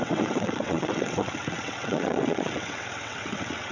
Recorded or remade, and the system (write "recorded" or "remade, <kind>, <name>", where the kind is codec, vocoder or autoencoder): remade, vocoder, WaveNeXt